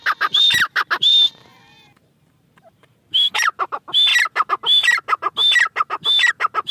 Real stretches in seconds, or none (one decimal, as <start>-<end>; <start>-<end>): 0.0-1.1; 3.0-6.7